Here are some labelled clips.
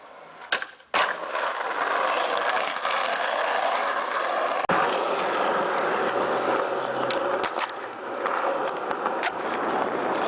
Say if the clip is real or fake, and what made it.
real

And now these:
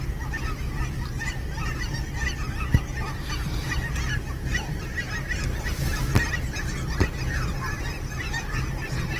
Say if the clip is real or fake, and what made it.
real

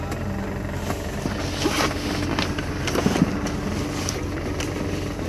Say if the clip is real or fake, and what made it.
real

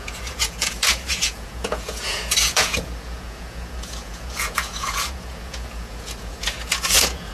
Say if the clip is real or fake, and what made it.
fake, vocoder, Vocos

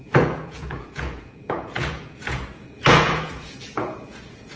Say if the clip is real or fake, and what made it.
fake, vocoder, Vocos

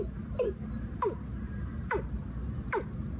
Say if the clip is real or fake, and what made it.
real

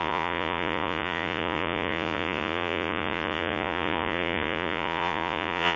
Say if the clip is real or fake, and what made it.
fake, vocoder, Vocos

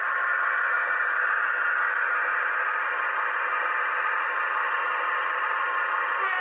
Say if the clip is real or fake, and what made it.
real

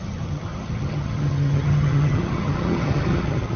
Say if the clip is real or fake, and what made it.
fake, vocoder, HiFi-GAN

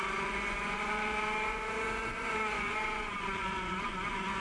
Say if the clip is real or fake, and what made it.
fake, vocoder, Vocos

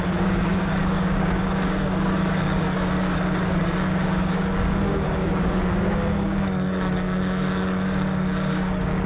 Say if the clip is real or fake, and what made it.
fake, codec, DAC